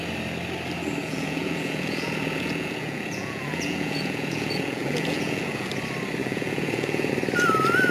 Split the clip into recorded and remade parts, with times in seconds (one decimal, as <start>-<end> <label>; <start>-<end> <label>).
0.0-1.0 recorded; 1.0-5.7 remade; 5.7-6.2 recorded; 6.2-7.1 remade; 7.1-7.9 recorded